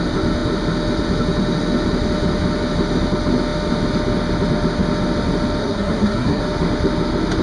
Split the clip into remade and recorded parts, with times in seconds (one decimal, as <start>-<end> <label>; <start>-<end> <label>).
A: 0.0-5.6 recorded; 5.6-6.4 remade; 6.4-7.4 recorded